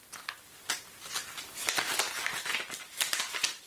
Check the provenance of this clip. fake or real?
real